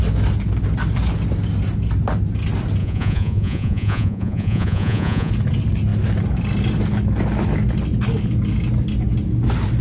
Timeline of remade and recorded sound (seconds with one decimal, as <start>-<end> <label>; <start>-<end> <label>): 0.0-2.8 recorded; 2.8-5.3 remade; 5.3-9.8 recorded